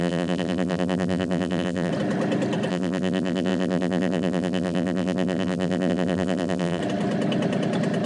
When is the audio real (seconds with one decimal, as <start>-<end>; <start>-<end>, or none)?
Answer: 1.9-2.7; 6.8-8.1